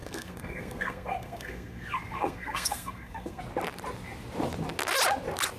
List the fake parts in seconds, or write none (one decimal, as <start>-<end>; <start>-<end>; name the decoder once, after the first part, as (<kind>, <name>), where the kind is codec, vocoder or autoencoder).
0.0-3.4 (codec, SNAC)